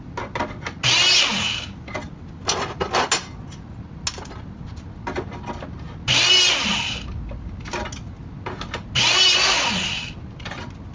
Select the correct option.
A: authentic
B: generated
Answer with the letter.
A